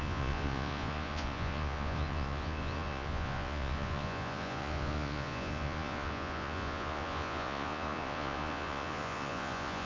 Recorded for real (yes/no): no